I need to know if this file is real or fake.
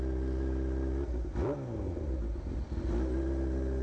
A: real